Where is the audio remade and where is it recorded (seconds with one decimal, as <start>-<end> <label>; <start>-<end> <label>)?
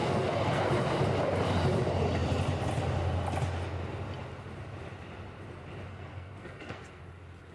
0.0-0.7 remade; 0.7-5.9 recorded; 5.9-7.0 remade; 7.0-7.5 recorded